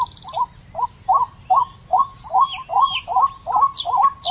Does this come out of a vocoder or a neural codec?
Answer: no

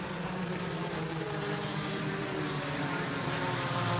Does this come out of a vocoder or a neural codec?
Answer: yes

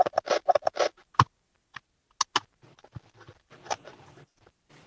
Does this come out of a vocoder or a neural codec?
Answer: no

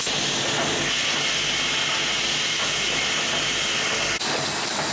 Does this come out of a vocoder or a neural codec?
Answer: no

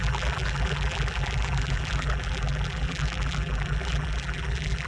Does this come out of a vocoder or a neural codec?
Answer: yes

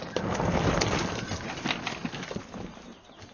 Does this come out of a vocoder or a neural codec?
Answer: no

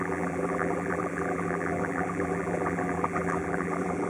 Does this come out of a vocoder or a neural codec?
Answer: yes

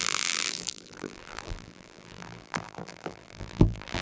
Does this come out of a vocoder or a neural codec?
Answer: yes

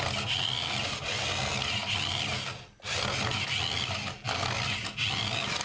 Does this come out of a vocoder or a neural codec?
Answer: no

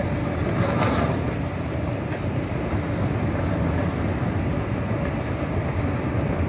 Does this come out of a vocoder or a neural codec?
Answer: no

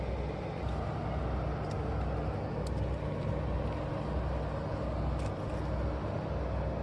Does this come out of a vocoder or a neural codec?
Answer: no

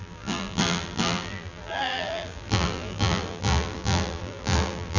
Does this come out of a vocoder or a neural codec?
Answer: yes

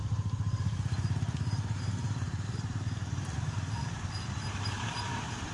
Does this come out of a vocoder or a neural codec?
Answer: yes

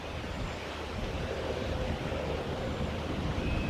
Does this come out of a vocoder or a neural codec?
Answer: yes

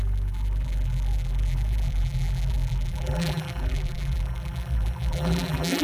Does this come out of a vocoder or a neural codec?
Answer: yes